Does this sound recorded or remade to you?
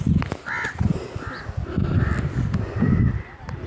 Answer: recorded